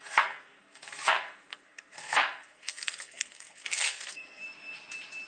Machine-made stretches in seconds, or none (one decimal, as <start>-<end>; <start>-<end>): 0.0-4.4